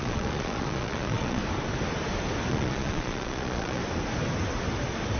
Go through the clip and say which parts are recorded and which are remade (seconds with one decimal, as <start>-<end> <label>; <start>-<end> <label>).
0.0-1.4 remade; 1.4-2.5 recorded; 2.5-3.8 remade; 3.8-5.2 recorded